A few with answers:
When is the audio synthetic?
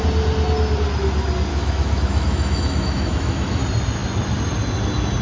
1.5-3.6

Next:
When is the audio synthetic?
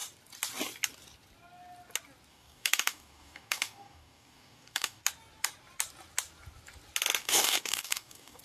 2.3-5.0; 7.2-8.4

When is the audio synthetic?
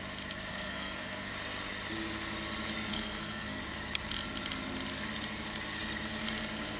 0.5-1.3; 2.9-3.6